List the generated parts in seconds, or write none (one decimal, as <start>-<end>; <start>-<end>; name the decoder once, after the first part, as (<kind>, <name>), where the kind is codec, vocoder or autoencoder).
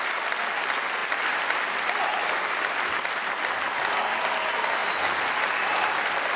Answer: none